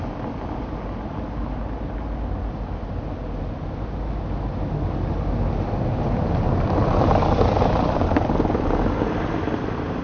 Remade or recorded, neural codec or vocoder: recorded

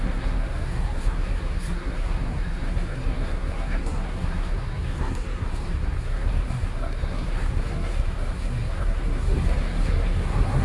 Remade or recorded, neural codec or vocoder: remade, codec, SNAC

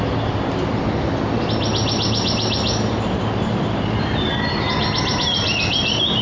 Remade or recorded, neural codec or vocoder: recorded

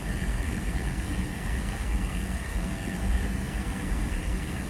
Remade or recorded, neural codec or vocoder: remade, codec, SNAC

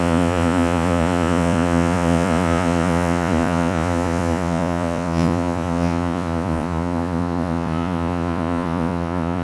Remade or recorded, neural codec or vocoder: remade, vocoder, Vocos